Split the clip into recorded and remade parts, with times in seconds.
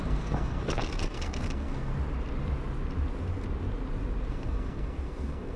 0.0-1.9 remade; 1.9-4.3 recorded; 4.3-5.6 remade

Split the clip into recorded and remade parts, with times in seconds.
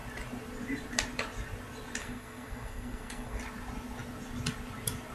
0.0-2.0 recorded; 2.0-3.4 remade; 3.4-5.1 recorded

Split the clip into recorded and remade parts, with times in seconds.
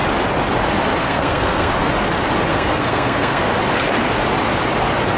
0.0-1.0 recorded; 1.0-1.7 remade; 1.7-2.5 recorded; 2.5-3.4 remade; 3.4-5.2 recorded